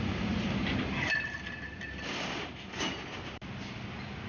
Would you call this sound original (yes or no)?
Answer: yes